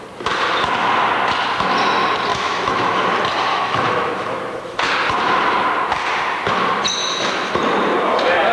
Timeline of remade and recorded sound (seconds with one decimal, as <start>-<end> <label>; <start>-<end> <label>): 0.0-2.3 recorded; 2.3-3.0 remade; 3.0-3.5 recorded; 3.5-4.9 remade; 4.9-7.0 recorded; 7.0-7.6 remade; 7.6-8.5 recorded